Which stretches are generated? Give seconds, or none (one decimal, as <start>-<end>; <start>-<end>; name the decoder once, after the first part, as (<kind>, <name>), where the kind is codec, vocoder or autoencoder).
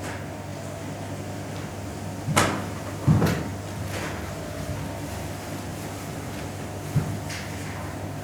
5.7-6.3 (vocoder, BigVGAN v2)